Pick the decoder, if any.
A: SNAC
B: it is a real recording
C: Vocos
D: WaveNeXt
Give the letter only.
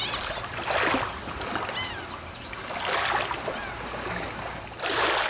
B